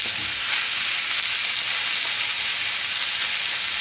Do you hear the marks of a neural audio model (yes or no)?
no